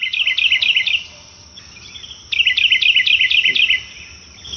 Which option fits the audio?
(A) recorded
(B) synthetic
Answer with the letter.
A